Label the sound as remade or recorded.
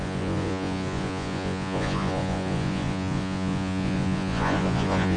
remade